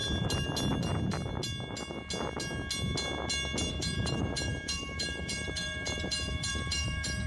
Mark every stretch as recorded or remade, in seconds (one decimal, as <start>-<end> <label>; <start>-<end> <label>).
0.0-3.7 recorded; 3.7-7.3 remade